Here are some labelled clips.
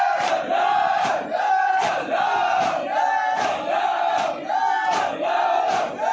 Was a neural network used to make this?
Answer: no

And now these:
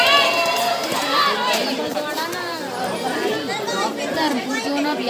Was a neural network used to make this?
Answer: yes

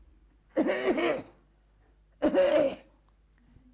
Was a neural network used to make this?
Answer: no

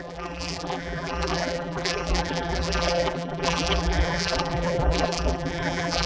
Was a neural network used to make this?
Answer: yes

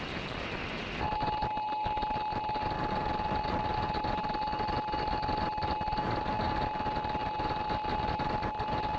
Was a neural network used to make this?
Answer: no